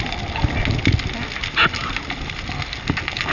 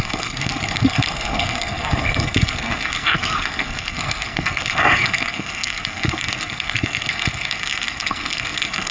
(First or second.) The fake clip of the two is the second